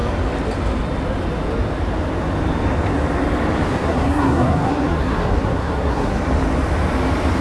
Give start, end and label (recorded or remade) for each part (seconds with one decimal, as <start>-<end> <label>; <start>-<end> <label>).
0.0-3.7 recorded; 3.7-6.2 remade; 6.2-7.4 recorded